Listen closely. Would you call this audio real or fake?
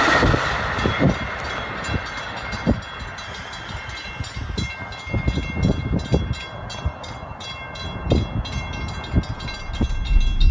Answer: real